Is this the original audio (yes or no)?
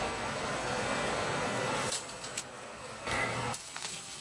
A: no